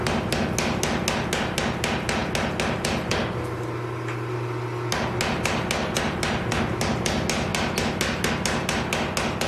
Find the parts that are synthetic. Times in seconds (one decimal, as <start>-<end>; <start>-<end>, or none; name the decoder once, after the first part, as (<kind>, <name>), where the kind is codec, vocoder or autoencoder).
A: none

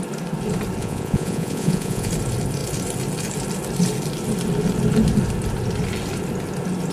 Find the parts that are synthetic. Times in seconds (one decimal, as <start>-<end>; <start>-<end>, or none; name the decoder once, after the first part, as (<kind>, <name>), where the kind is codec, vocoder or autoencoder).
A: 0.8-2.1 (vocoder, Vocos)

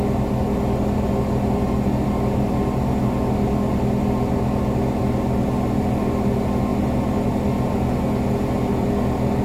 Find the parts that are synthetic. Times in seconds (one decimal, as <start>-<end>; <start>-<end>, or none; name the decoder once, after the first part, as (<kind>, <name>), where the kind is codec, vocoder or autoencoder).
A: none

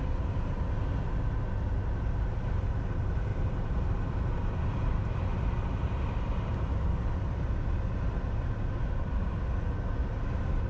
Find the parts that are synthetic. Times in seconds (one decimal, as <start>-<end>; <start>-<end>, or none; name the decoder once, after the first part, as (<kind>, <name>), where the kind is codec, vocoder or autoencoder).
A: 3.3-7.8 (vocoder, BigVGAN v2)